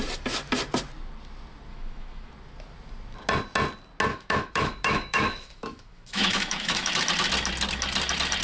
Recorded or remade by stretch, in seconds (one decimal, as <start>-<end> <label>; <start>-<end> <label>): 0.0-1.7 recorded; 1.7-2.3 remade; 2.3-4.1 recorded; 4.1-6.9 remade; 6.9-8.4 recorded